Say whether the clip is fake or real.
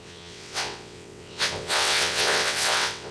fake